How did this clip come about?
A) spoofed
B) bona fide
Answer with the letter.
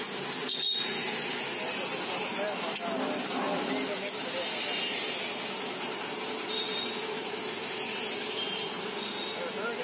B